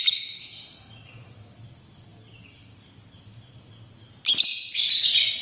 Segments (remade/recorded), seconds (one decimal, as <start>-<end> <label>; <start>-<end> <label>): 0.0-5.4 recorded